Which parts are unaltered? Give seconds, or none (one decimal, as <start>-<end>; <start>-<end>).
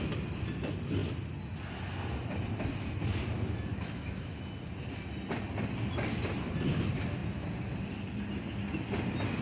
0.0-3.7; 4.4-9.4